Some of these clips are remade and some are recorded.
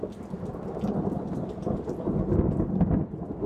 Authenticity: recorded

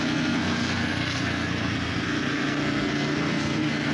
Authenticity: remade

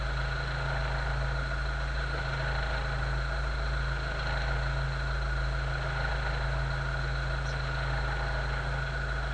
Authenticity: recorded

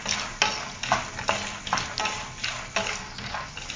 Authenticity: recorded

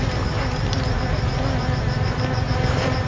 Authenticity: recorded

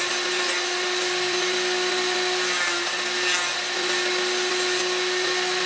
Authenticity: recorded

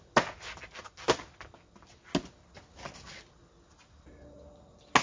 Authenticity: recorded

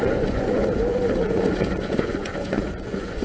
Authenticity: remade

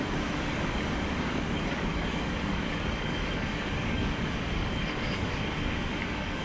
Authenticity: remade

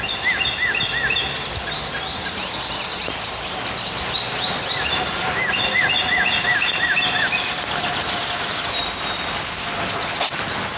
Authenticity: recorded